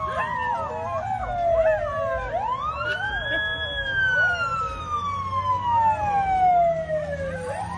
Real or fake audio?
real